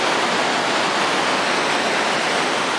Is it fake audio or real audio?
real